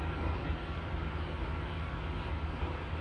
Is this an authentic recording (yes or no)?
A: no